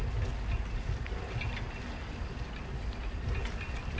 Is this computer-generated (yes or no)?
no